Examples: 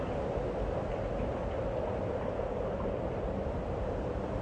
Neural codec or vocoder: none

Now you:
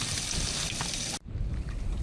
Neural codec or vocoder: none